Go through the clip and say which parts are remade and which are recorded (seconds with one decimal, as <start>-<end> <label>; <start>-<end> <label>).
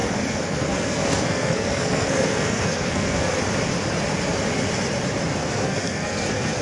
0.0-3.3 remade; 3.3-5.4 recorded; 5.4-6.6 remade